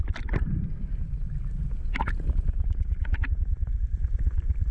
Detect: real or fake real